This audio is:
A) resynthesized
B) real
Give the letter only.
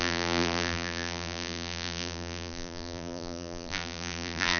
A